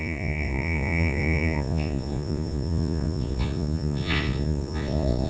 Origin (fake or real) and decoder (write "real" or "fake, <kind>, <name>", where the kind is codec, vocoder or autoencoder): fake, vocoder, Vocos